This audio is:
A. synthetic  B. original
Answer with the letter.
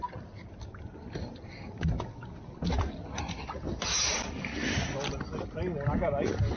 B